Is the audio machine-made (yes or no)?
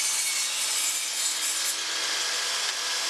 no